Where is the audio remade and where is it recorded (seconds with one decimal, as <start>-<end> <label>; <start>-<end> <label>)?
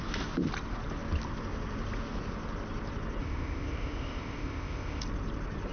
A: 0.0-3.2 recorded; 3.2-5.0 remade; 5.0-5.7 recorded